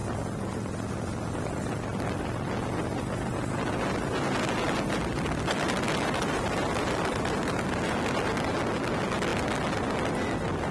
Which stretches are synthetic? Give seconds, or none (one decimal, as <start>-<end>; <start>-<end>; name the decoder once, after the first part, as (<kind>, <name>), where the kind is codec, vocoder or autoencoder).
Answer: none